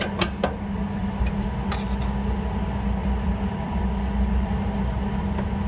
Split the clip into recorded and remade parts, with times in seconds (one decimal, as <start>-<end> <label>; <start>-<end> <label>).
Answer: 0.0-3.0 recorded; 3.0-3.8 remade; 3.8-5.7 recorded